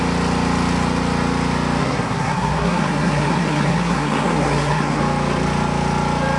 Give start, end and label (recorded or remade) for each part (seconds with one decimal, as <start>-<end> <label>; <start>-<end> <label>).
0.0-1.8 recorded; 1.8-5.0 remade; 5.0-6.4 recorded